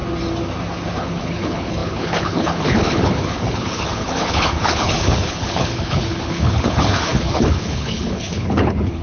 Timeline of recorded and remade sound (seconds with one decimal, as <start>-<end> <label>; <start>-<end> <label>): 0.0-1.0 recorded; 1.0-9.0 remade